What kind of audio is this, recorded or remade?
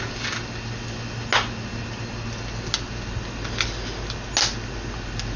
recorded